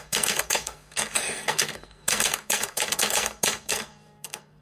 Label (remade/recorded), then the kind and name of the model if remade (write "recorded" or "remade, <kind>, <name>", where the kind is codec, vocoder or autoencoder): remade, codec, SNAC